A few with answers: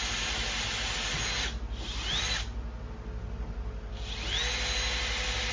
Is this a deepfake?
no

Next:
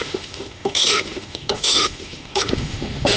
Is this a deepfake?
yes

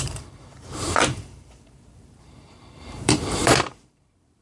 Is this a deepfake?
yes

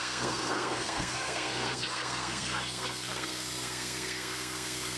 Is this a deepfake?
yes